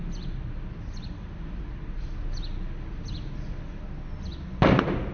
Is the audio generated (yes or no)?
no